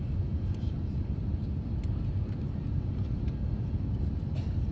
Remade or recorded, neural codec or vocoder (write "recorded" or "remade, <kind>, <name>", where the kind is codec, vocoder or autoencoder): recorded